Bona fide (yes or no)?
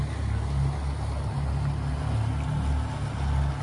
yes